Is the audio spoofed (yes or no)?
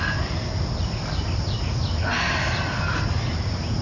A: no